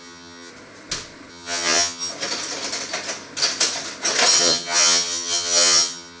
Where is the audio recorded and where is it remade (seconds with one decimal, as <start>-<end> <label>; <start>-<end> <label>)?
0.0-0.5 remade; 0.5-1.3 recorded; 1.3-2.1 remade; 2.1-4.4 recorded; 4.4-6.2 remade